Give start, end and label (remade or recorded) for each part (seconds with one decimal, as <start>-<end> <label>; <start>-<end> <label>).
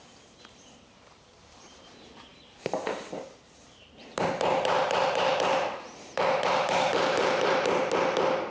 0.0-8.5 remade